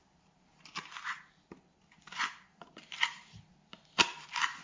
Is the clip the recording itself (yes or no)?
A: yes